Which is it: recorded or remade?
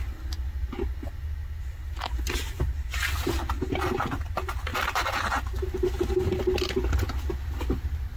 recorded